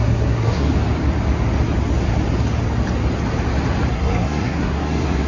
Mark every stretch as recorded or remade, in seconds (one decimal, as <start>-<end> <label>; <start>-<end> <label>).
0.0-0.7 remade; 0.7-3.9 recorded; 3.9-5.3 remade